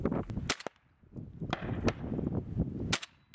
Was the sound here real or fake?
real